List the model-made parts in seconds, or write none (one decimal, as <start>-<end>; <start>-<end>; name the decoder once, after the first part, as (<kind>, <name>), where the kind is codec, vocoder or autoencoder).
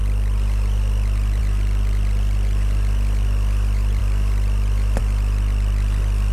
none